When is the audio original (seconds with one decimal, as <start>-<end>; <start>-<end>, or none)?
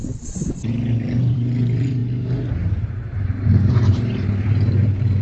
2.0-3.7